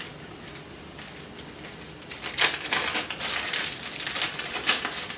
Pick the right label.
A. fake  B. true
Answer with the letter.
B